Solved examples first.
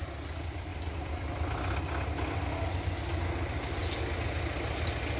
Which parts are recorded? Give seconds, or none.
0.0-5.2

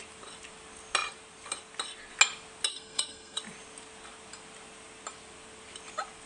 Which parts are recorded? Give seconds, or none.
0.0-2.7; 3.4-6.3

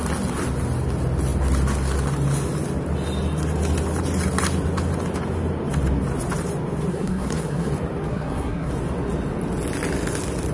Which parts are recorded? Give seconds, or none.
0.0-6.9; 7.7-8.1; 8.7-10.5

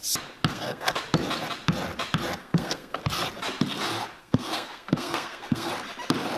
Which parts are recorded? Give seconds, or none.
0.0-0.5; 1.0-2.4; 3.0-4.2; 5.7-6.4

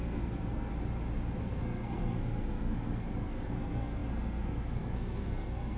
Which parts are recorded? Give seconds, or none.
0.7-1.4

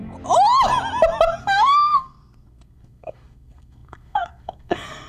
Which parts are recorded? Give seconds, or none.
0.0-1.4

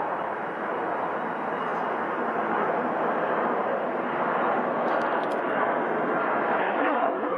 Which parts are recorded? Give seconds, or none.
0.0-6.6